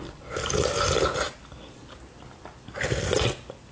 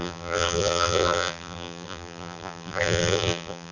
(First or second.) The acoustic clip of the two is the first